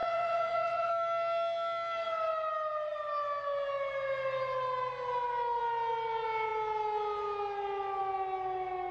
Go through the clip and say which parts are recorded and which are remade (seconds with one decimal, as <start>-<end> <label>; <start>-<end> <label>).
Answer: 0.0-0.9 remade; 0.9-8.9 recorded